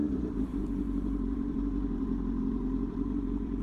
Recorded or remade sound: remade